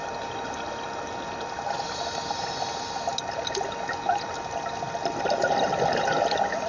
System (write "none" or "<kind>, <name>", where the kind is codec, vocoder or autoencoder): none